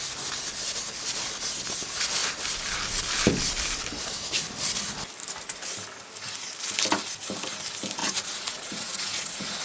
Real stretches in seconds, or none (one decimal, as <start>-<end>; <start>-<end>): 0.0-8.0